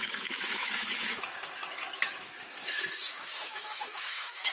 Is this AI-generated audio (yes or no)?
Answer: yes